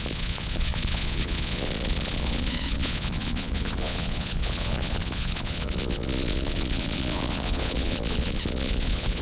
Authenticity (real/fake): fake